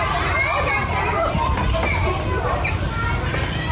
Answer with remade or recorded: recorded